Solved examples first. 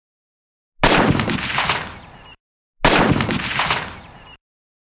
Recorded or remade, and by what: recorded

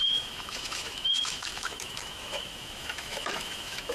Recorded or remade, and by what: remade, autoencoder, DAC-VAE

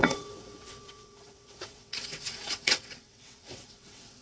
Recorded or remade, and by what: remade, vocoder, WaveNeXt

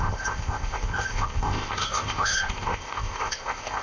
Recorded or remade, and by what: remade, codec, ZipCodec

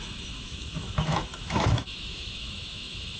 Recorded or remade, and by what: remade, autoencoder, DAC-VAE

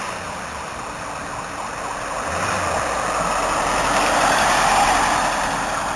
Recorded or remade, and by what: recorded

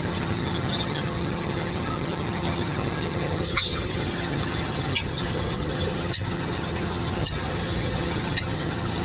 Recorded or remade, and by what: remade, vocoder, HiFi-GAN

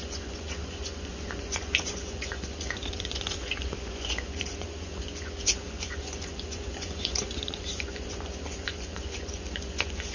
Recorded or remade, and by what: remade, vocoder, Vocos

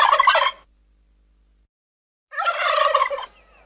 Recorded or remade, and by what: recorded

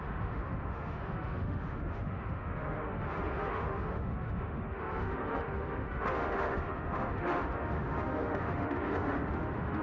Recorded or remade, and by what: remade, autoencoder, DAC-VAE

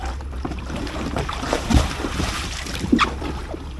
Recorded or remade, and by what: remade, vocoder, BigVGAN v2